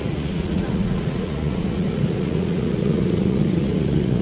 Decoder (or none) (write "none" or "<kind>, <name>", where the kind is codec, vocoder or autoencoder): vocoder, Vocos